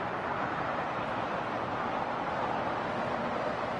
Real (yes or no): yes